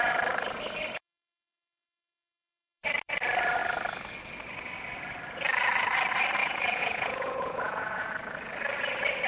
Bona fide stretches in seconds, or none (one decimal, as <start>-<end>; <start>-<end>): 0.0-6.4; 8.1-9.3